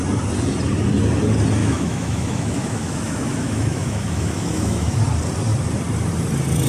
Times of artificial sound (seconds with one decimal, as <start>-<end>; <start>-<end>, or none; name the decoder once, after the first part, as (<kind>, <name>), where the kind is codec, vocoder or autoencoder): 1.6-5.0 (autoencoder, DAC-VAE)